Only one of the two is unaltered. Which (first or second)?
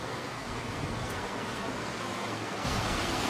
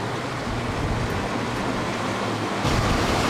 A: second